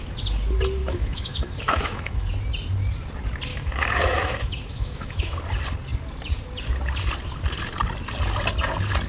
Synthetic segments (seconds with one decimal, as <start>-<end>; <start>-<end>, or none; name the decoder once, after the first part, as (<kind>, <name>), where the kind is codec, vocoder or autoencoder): 0.8-2.3 (autoencoder, DAC-VAE); 3.5-5.4

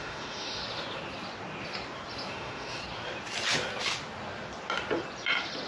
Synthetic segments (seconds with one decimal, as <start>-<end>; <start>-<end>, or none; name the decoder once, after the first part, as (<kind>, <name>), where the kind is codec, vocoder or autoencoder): 0.0-0.6 (autoencoder, DAC-VAE); 2.3-2.8

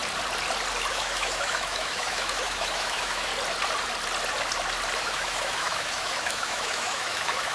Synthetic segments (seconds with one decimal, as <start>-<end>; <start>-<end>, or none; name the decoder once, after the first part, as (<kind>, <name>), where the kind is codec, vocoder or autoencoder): 0.9-3.3 (autoencoder, DAC-VAE); 5.0-7.5

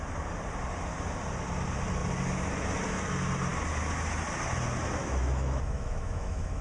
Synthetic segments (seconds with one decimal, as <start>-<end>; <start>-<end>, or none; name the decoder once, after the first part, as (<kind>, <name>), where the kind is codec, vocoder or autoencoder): 5.0-6.6 (autoencoder, DAC-VAE)

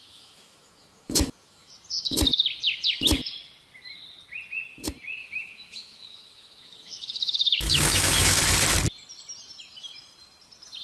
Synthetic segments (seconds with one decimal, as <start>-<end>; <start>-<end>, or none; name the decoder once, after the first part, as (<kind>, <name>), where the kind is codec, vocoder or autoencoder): 0.0-1.7 (autoencoder, DAC-VAE); 5.2-8.4